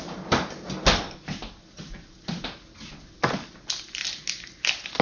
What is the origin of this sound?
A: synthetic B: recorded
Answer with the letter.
B